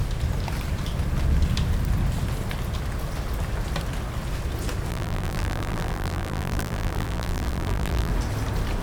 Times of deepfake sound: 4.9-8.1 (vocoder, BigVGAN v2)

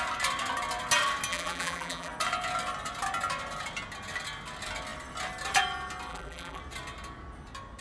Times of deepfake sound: 1.3-2.1 (vocoder, BigVGAN v2); 6.1-6.6

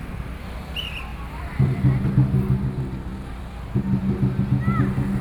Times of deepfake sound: 1.1-2.1 (vocoder, BigVGAN v2); 3.1-3.8

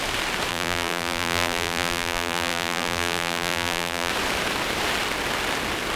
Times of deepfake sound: 0.5-4.1 (vocoder, BigVGAN v2)

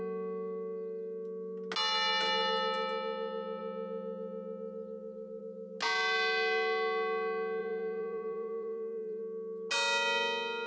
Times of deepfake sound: 7.6-9.2 (vocoder, BigVGAN v2)

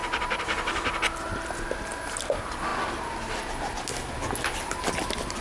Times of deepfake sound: none

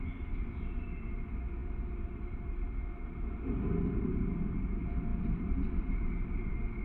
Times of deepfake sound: 0.0-6.8 (vocoder, BigVGAN v2)

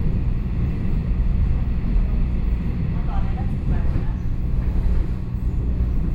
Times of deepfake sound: 0.0-1.0 (vocoder, BigVGAN v2); 2.5-3.7; 5.6-6.1